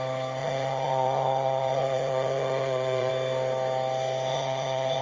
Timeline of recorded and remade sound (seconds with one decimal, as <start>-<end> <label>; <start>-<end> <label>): 0.0-0.4 recorded; 0.4-3.1 remade; 3.1-4.3 recorded; 4.3-5.0 remade